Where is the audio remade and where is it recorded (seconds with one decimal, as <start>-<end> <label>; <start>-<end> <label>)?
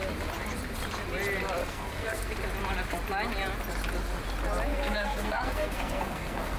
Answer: 0.0-1.6 recorded; 1.6-2.3 remade; 2.3-4.7 recorded; 4.7-6.6 remade